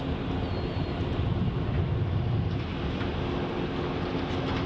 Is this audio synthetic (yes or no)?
no